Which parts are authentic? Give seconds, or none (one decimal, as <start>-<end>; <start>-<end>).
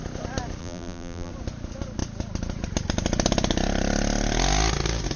0.0-0.6; 1.3-5.2